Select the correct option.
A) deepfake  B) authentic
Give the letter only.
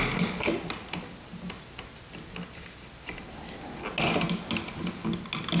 B